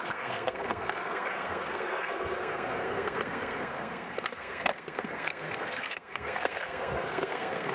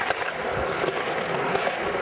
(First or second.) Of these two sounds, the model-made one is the first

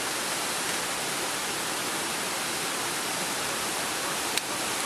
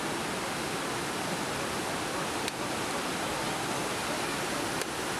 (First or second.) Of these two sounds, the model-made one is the first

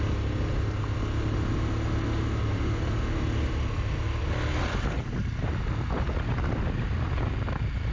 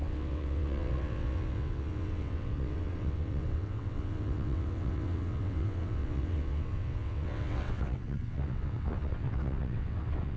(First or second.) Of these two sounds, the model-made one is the second